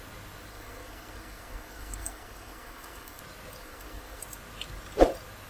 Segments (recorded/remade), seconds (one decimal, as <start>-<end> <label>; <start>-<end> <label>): 0.0-0.5 recorded; 0.5-3.2 remade; 3.2-3.6 recorded; 3.6-4.2 remade; 4.2-5.5 recorded